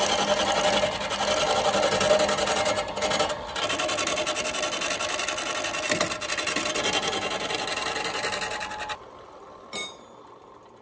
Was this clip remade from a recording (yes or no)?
no